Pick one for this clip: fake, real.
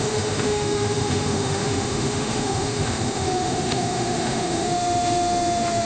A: fake